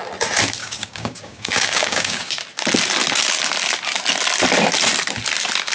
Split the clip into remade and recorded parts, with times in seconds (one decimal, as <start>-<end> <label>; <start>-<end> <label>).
0.0-0.6 recorded; 0.6-2.3 remade; 2.3-5.7 recorded